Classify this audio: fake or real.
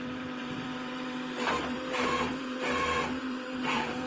fake